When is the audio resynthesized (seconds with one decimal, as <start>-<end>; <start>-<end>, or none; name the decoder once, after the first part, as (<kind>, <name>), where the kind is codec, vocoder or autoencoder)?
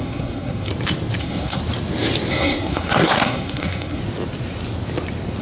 0.0-0.7 (codec, SNAC); 1.2-1.6; 2.3-4.0